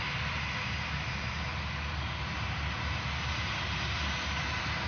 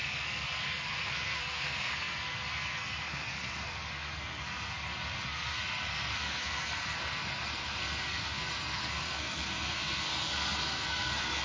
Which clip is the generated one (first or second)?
second